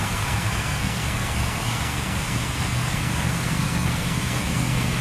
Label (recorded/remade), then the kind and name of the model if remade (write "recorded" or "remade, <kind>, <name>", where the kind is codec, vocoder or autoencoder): remade, codec, SNAC